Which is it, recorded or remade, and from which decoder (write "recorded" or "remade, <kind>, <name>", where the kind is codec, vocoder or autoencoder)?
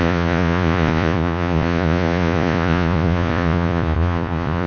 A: remade, vocoder, Vocos